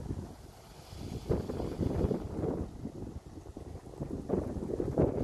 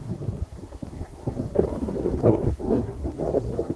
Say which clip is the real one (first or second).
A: first